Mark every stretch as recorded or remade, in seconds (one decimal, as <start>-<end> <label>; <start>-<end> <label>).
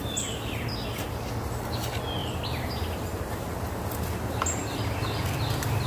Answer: 0.0-5.9 recorded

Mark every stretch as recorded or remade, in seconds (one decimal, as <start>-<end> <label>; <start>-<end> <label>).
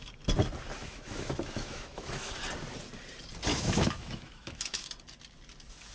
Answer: 0.0-0.8 recorded; 0.8-2.3 remade; 2.3-3.5 recorded; 3.5-4.9 remade; 4.9-5.9 recorded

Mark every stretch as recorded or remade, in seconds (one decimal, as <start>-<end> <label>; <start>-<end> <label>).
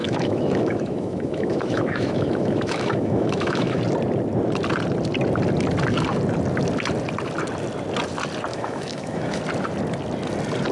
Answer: 0.0-3.8 remade; 3.8-8.5 recorded; 8.5-9.4 remade; 9.4-10.7 recorded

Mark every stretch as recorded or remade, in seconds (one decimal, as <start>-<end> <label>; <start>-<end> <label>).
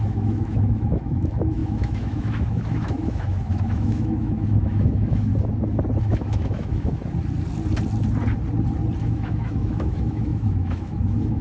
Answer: 0.0-5.3 remade; 5.3-6.0 recorded; 6.0-7.0 remade; 7.0-9.0 recorded; 9.0-11.4 remade